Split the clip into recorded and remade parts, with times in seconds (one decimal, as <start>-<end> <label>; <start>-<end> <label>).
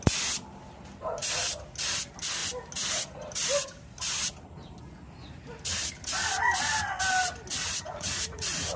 0.0-7.6 recorded; 7.6-8.8 remade